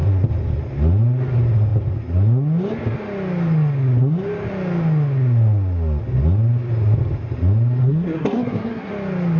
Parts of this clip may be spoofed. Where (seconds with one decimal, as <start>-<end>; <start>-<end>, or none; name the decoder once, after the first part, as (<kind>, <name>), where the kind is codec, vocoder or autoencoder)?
7.8-8.9 (codec, SNAC)